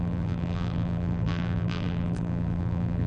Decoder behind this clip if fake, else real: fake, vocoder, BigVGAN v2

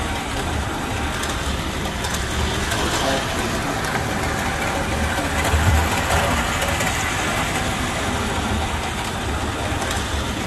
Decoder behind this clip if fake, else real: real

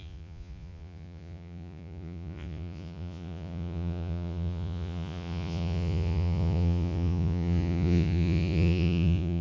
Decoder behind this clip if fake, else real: fake, vocoder, Vocos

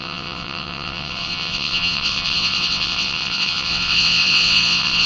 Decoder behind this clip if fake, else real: fake, vocoder, WaveNeXt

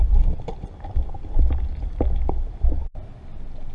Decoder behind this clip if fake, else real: real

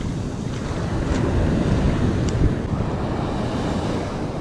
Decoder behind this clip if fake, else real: real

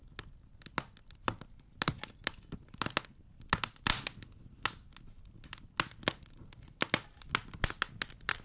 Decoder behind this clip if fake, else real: real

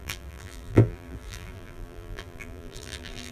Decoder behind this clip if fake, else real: fake, vocoder, BigVGAN v2